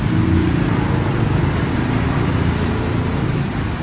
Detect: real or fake real